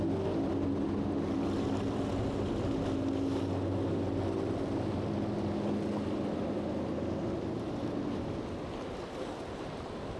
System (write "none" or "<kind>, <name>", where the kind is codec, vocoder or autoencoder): none